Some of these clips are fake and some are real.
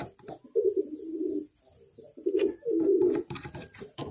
fake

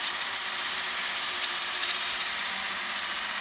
fake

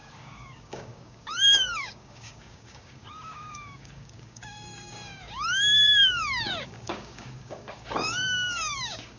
fake